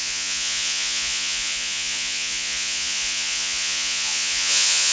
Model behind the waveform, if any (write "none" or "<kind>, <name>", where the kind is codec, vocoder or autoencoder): vocoder, Vocos